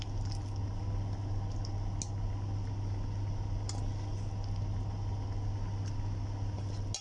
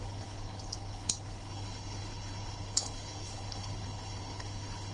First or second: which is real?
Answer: first